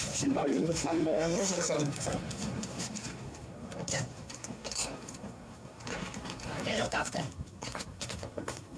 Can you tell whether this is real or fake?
fake